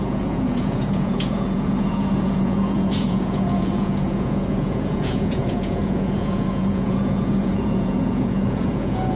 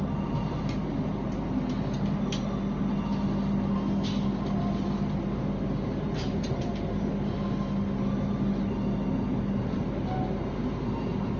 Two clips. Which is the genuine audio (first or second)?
second